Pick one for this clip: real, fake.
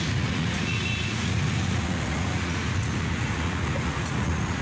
fake